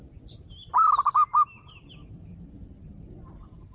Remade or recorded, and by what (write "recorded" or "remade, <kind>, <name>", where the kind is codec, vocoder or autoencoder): recorded